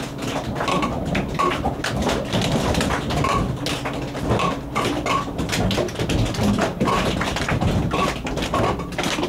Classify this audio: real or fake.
real